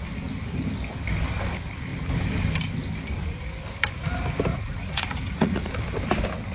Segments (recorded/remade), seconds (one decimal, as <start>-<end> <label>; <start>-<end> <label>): 0.0-4.5 recorded; 4.5-5.7 remade; 5.7-6.5 recorded